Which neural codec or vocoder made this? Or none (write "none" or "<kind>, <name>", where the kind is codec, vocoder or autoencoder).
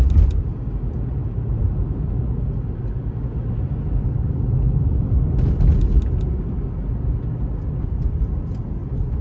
none